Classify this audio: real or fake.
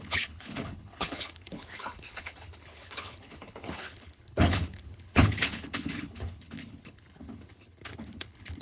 fake